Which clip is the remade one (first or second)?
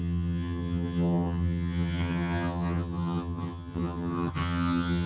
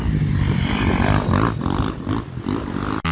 first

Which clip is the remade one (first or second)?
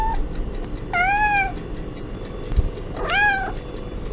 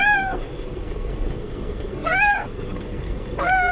second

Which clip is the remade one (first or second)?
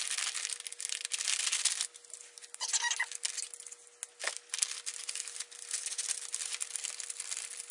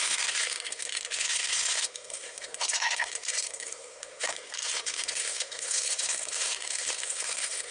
second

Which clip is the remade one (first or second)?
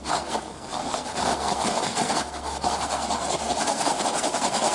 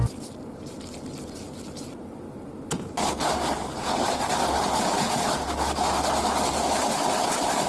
first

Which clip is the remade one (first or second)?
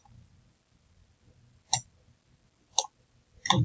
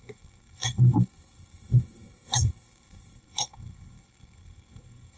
second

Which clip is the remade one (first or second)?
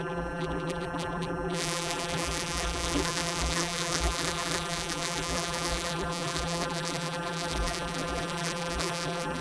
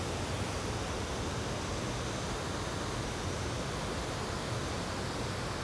first